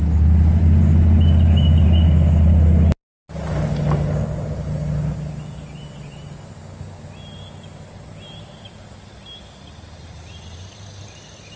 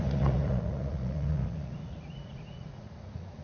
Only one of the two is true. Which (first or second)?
first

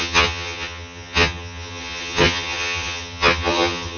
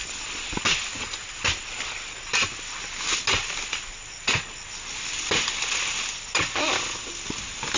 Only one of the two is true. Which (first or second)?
second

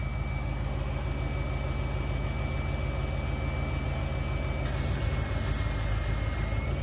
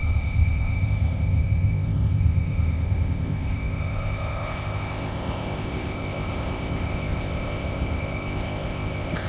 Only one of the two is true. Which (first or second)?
first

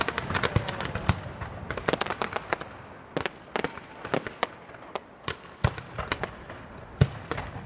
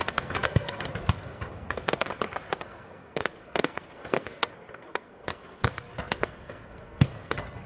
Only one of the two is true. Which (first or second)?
first